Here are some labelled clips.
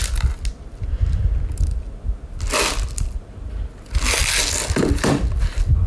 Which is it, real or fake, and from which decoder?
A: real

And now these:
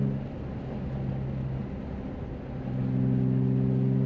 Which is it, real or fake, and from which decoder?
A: real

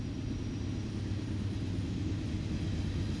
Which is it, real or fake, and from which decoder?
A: real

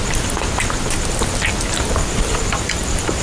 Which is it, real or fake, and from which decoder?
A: real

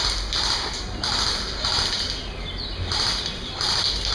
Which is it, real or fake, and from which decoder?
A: real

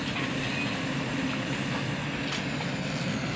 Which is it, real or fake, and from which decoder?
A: real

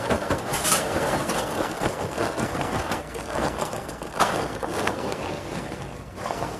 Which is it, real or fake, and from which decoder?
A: fake, codec, SNAC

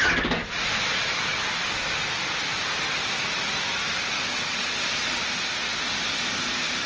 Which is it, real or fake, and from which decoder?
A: real